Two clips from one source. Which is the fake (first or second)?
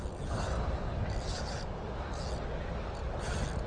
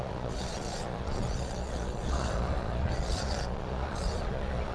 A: second